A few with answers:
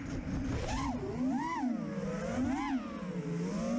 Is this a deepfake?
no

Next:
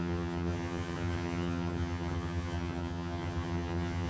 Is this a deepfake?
yes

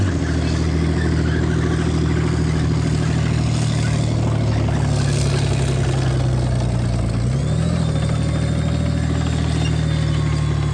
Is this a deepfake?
no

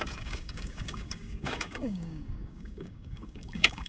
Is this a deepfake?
yes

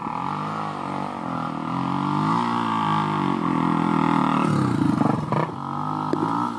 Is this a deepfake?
no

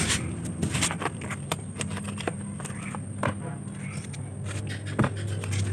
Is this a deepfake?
no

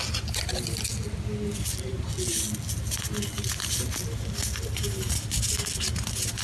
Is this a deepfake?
no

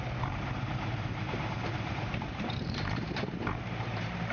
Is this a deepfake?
yes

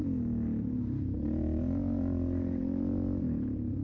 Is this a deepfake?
no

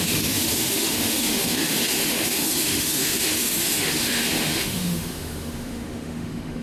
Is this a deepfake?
yes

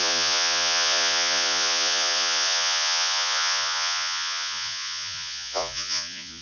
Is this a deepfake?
yes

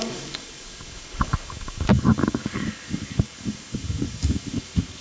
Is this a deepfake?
yes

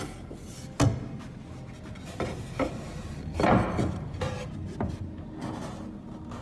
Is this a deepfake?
no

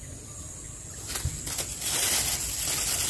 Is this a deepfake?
no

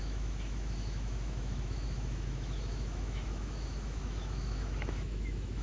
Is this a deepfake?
yes